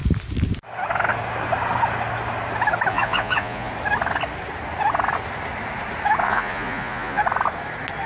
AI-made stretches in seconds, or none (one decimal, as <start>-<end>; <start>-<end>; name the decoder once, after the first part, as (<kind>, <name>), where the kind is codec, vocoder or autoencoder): 2.9-3.7 (vocoder, Vocos); 6.2-7.2